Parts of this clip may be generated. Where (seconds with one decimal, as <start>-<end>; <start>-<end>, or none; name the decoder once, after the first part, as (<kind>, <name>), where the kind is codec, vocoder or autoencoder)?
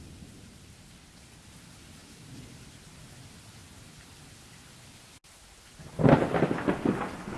none